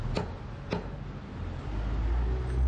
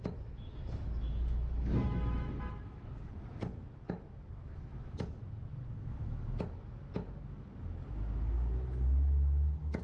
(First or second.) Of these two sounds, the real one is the first